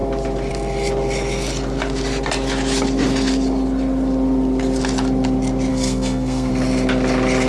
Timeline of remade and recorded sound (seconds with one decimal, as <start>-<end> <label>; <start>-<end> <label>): 0.0-5.7 recorded; 5.7-6.5 remade; 6.5-7.5 recorded